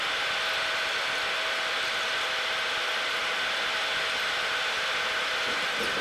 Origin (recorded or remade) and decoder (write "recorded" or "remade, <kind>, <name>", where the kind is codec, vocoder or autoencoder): recorded